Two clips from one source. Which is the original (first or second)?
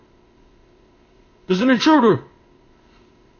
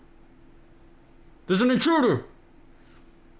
second